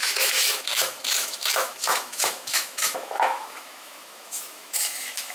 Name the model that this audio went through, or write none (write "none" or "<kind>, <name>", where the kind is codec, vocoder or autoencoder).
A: autoencoder, DAC-VAE